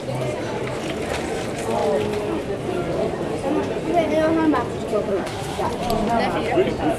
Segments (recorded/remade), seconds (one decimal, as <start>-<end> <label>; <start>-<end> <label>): 0.0-5.1 recorded; 5.1-5.6 remade; 5.6-7.0 recorded